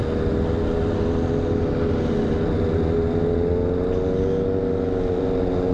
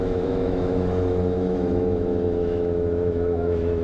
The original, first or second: first